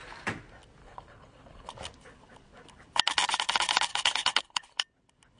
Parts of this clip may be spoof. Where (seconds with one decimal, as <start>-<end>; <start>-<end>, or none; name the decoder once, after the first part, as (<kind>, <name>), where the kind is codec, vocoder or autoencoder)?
0.8-1.7 (codec, HILCodec); 3.9-4.8